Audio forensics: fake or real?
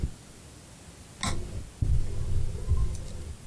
real